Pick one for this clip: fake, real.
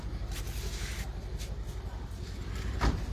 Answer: fake